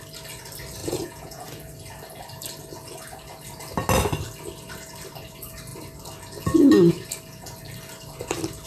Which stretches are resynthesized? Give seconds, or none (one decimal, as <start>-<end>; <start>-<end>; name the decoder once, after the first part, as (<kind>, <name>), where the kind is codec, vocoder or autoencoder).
0.8-1.4 (vocoder, Vocos)